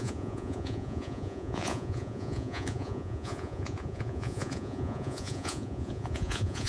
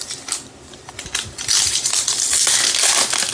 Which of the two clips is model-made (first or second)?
first